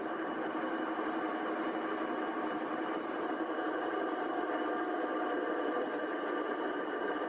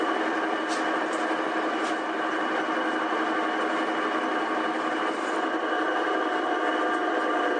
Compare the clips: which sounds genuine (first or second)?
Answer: second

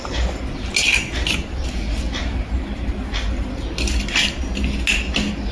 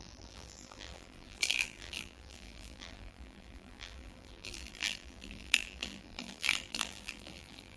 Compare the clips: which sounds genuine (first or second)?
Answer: first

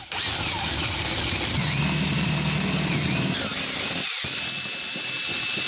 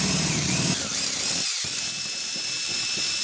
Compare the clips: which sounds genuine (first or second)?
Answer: first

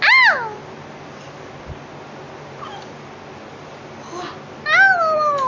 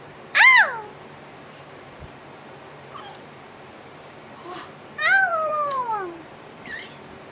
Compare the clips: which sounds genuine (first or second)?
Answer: first